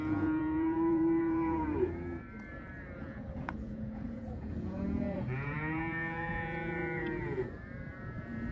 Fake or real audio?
fake